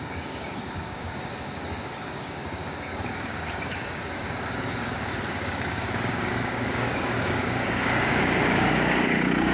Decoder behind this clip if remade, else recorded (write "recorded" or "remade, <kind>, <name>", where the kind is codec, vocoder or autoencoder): remade, codec, DAC